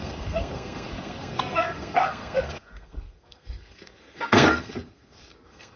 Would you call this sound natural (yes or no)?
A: no